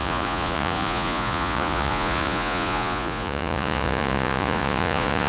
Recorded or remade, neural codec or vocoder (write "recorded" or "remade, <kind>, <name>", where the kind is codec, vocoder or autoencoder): remade, vocoder, Vocos